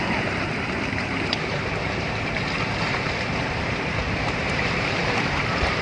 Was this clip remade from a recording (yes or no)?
yes